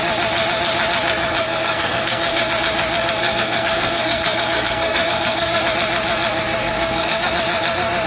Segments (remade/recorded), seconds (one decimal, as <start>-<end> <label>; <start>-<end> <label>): 0.0-1.4 recorded; 1.4-2.5 remade; 2.5-3.2 recorded; 3.2-5.6 remade; 5.6-6.6 recorded; 6.6-7.3 remade; 7.3-8.1 recorded